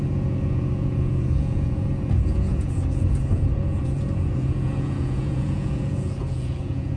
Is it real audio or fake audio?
fake